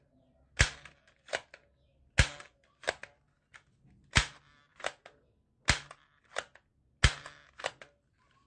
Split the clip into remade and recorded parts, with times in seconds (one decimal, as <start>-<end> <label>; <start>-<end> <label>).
0.0-8.5 recorded